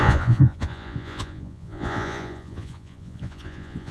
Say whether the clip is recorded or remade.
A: remade